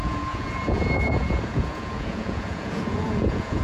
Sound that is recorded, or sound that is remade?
remade